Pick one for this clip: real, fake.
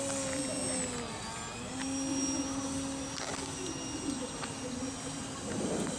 real